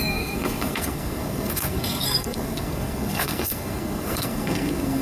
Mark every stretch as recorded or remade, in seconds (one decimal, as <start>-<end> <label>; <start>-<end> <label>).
0.0-5.0 remade